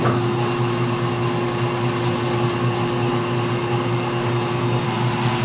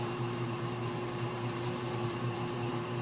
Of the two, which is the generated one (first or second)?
second